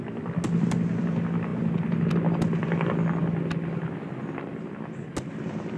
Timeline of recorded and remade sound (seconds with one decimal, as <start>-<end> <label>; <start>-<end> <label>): 0.0-5.8 recorded